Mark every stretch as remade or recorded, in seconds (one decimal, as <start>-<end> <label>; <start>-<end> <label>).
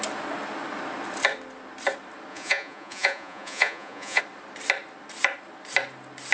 0.0-2.3 recorded; 2.3-4.2 remade; 4.2-6.3 recorded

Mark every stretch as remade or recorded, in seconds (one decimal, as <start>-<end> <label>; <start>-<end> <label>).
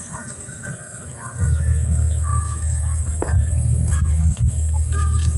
0.0-5.4 remade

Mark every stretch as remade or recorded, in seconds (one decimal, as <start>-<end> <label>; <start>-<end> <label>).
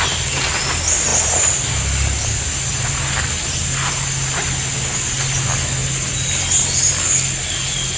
0.0-8.0 recorded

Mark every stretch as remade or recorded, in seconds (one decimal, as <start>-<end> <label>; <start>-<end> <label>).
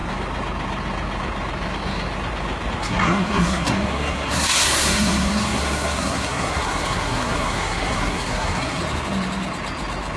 0.0-2.8 recorded; 2.8-8.8 remade; 8.8-10.2 recorded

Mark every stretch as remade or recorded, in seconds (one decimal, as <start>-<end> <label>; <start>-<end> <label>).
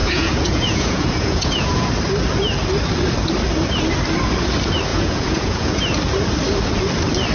0.0-1.9 remade; 1.9-4.9 recorded; 4.9-5.8 remade; 5.8-7.3 recorded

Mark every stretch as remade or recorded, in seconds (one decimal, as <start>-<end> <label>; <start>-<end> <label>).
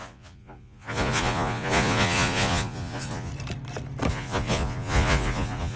0.0-3.3 remade; 3.3-4.1 recorded; 4.1-5.8 remade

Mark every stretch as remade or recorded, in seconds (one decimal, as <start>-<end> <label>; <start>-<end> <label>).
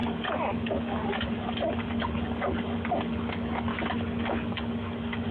0.0-3.7 remade; 3.7-4.2 recorded; 4.2-5.3 remade